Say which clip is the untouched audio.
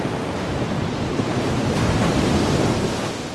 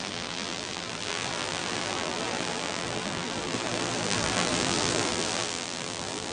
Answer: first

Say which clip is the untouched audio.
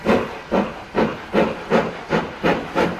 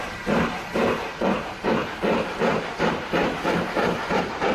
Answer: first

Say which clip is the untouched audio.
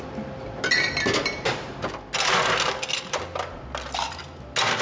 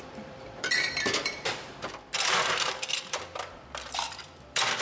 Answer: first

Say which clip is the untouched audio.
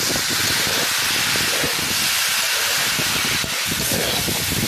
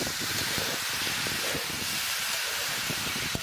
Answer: first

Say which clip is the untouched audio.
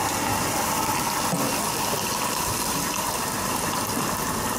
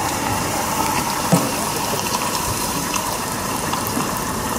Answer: first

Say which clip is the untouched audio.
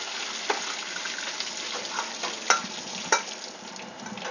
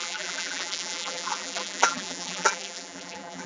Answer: first